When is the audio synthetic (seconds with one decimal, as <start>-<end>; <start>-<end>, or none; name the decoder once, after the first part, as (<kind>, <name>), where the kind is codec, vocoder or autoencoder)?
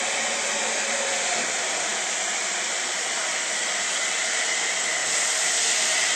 0.0-5.0 (vocoder, BigVGAN v2); 5.7-6.2